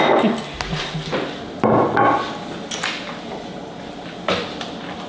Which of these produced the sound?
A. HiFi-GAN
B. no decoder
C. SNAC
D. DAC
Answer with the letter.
B